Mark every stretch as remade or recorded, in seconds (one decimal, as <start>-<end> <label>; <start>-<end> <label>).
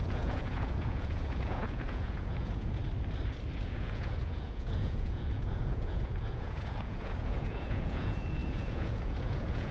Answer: 0.0-2.8 remade; 2.8-3.5 recorded; 3.5-9.7 remade